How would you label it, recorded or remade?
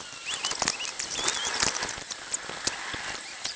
recorded